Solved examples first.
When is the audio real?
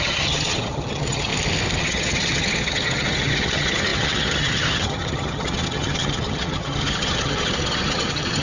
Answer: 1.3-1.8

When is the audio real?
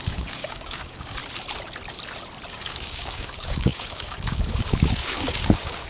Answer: 1.2-2.5